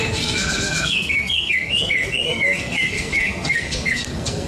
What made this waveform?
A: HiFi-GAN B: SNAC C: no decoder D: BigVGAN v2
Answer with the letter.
B